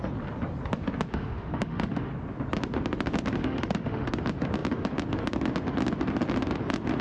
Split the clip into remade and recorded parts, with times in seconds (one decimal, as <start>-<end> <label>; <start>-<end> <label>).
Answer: 0.0-1.1 recorded; 1.1-2.1 remade; 2.1-3.4 recorded; 3.4-4.1 remade; 4.1-7.0 recorded